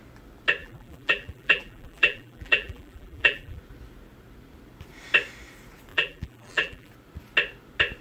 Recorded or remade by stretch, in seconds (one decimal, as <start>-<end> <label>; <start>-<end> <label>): 0.0-0.6 recorded; 0.6-3.6 remade; 3.6-5.9 recorded; 5.9-6.9 remade; 6.9-8.0 recorded